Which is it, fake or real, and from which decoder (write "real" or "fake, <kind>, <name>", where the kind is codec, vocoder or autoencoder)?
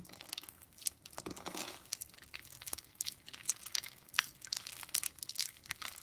fake, codec, SNAC